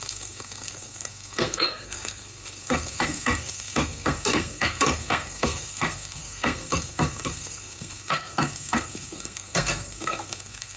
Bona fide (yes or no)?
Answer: no